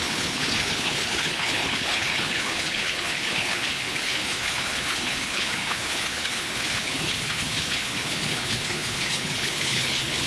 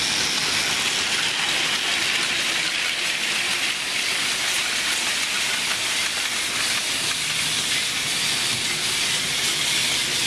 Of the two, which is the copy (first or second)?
first